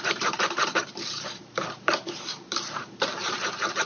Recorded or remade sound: remade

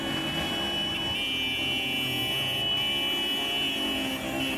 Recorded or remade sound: recorded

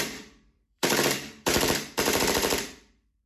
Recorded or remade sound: remade